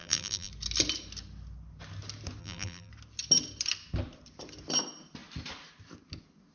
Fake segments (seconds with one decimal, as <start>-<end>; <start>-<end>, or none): 0.0-0.5; 2.4-2.9